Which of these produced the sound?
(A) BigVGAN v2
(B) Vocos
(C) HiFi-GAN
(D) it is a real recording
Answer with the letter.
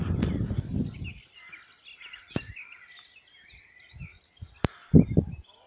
D